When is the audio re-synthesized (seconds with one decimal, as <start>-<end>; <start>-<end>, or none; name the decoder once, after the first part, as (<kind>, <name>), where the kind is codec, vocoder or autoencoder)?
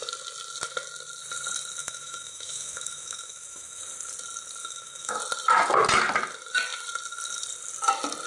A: 1.8-3.8 (autoencoder, DAC-VAE); 4.6-5.2